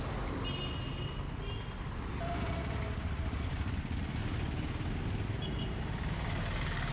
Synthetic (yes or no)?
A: no